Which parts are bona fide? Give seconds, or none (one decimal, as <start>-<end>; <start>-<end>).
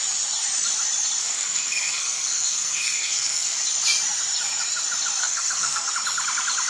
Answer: 0.0-1.2; 3.6-5.2; 5.9-6.7